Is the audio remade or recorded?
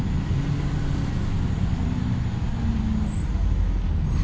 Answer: recorded